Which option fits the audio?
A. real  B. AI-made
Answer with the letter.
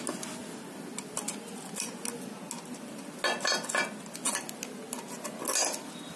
A